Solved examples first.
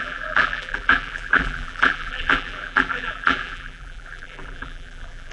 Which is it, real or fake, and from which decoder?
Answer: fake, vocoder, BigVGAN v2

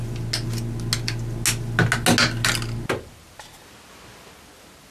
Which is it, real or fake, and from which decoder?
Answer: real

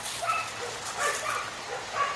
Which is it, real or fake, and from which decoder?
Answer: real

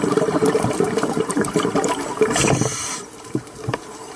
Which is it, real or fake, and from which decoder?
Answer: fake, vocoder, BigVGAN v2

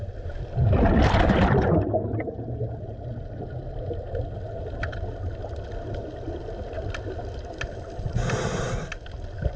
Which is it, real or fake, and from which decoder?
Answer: real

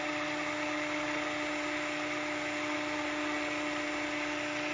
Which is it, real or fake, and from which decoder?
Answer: real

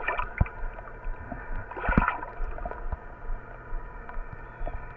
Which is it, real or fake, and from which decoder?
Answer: real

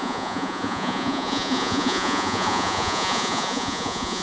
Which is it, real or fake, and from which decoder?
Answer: fake, vocoder, Vocos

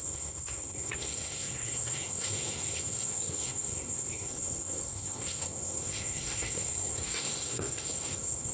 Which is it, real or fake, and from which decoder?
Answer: fake, codec, SNAC